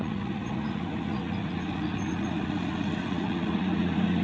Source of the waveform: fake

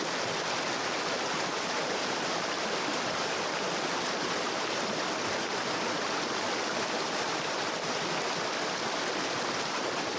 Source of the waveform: real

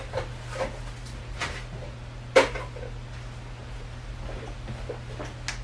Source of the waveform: real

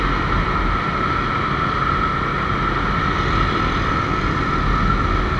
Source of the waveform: real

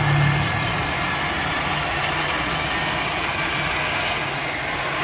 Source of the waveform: real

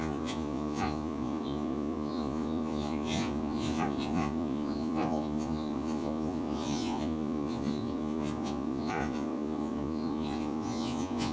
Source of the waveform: fake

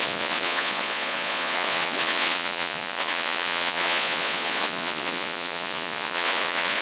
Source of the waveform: fake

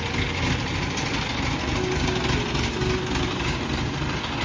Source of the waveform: real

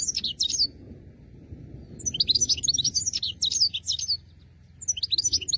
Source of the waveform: real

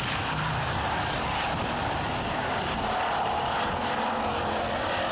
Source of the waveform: real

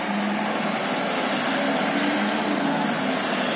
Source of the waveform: real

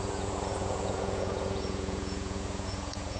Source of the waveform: fake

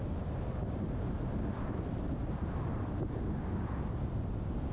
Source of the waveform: real